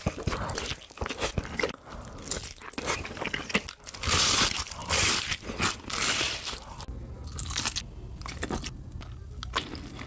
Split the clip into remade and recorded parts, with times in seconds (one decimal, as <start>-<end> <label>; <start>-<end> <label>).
0.0-10.1 recorded